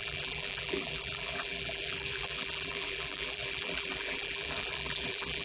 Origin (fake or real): fake